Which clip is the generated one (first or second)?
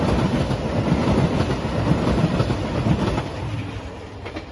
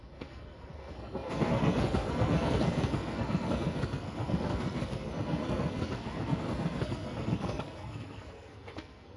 second